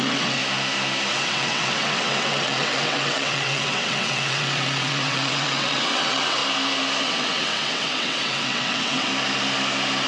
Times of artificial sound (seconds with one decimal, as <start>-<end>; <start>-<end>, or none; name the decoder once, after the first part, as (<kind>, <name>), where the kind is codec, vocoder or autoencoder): 0.0-0.4 (vocoder, WaveNeXt); 1.1-6.4; 7.0-9.1